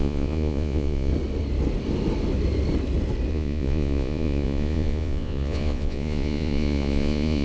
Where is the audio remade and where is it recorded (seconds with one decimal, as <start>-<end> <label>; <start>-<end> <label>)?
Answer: 0.0-1.1 remade; 1.1-3.3 recorded; 3.3-7.4 remade